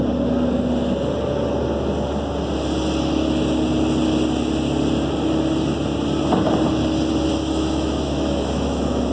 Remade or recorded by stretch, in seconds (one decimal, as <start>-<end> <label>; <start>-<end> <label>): 0.0-7.3 recorded; 7.3-9.1 remade